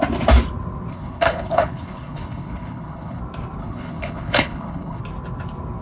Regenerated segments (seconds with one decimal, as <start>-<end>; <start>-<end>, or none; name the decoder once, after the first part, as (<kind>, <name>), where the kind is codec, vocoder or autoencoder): 0.9-3.2 (codec, HILCodec); 3.6-5.0